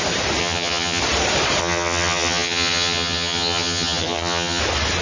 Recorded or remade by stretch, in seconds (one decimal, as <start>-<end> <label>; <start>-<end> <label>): 0.0-0.4 recorded; 0.4-1.0 remade; 1.0-1.6 recorded; 1.6-4.6 remade; 4.6-5.0 recorded